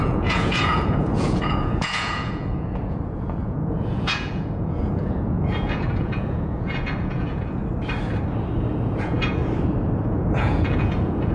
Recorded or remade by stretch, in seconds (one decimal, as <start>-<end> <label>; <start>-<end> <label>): 0.0-7.6 remade; 7.6-8.8 recorded; 8.8-9.4 remade; 9.4-10.1 recorded; 10.1-11.3 remade